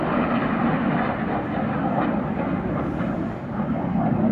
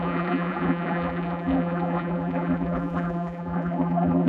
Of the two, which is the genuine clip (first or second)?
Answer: first